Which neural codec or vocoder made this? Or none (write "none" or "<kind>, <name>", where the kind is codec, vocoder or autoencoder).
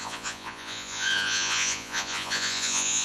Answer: vocoder, Vocos